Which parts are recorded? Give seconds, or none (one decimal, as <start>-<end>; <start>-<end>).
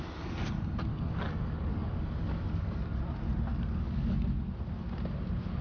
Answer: 0.0-0.9; 3.0-3.5; 4.1-5.6